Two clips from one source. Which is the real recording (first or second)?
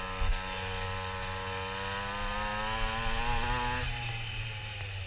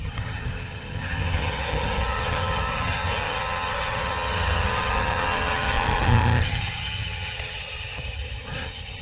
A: first